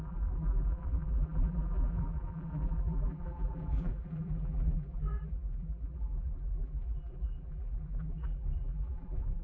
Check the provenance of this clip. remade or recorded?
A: remade